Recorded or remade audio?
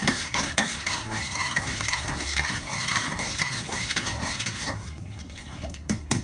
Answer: remade